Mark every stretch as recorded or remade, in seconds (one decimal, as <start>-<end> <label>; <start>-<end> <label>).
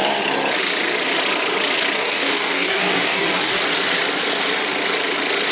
0.0-2.0 recorded; 2.0-3.6 remade; 3.6-5.5 recorded